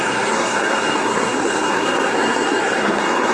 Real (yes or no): no